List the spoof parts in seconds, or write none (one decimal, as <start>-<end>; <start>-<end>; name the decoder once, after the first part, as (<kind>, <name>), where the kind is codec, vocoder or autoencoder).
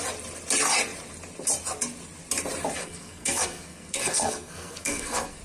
2.8-5.4 (codec, SNAC)